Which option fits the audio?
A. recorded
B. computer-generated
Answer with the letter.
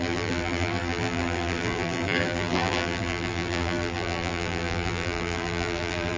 B